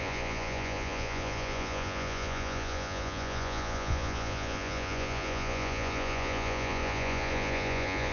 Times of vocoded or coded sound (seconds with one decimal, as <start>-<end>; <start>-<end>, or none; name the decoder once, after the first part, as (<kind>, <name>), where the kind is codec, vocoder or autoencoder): 0.0-8.1 (vocoder, Vocos)